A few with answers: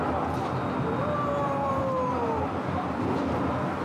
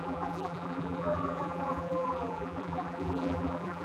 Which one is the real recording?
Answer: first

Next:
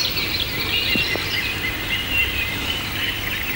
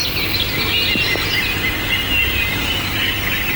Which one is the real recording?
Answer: second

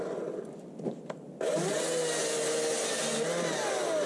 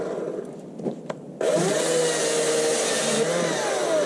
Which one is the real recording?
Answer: first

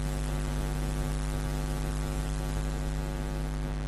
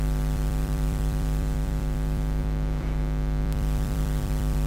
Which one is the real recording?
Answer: first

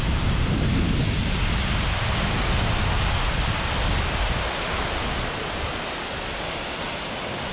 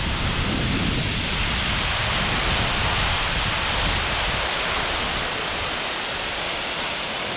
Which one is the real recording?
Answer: first